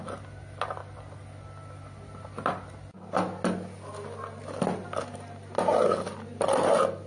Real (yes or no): yes